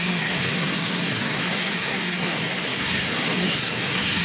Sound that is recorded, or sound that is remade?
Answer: remade